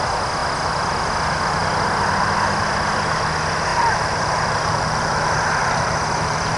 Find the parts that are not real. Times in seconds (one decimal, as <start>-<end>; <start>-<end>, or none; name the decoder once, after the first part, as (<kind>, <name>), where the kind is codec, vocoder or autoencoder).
3.7-6.6 (vocoder, BigVGAN v2)